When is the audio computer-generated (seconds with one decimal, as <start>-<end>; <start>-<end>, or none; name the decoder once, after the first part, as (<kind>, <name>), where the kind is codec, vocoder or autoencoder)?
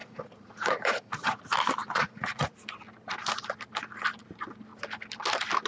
0.0-1.4 (vocoder, Vocos); 1.8-2.6